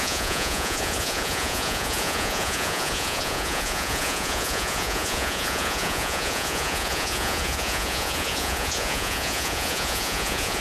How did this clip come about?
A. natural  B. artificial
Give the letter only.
B